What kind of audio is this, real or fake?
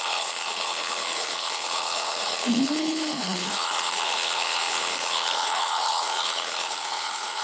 fake